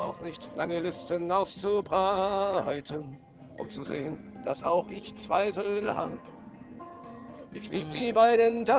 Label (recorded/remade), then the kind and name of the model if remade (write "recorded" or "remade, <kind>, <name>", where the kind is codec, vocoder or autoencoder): remade, vocoder, HiFi-GAN